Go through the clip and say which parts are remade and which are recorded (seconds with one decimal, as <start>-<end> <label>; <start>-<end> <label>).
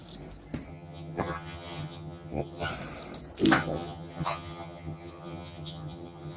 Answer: 0.0-0.7 recorded; 0.7-2.7 remade; 2.7-3.6 recorded; 3.6-6.4 remade